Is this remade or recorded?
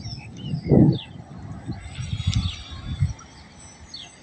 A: recorded